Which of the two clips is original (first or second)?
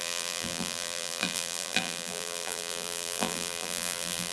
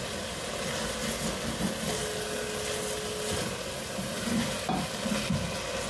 second